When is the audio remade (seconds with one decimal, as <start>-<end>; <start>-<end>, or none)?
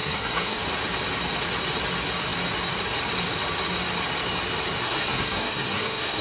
0.0-0.6; 4.8-6.2